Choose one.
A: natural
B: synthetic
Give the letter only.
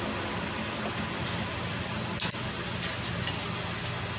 A